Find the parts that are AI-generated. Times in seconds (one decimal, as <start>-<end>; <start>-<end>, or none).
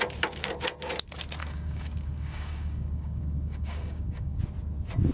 1.4-4.4